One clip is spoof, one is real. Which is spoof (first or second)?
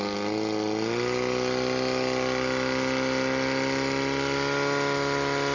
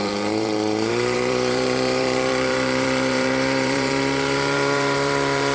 second